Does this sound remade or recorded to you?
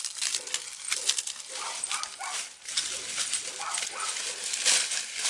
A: recorded